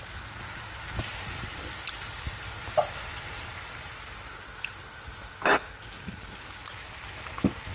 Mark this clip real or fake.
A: real